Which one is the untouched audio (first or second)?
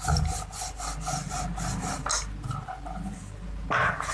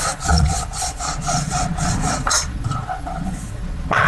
first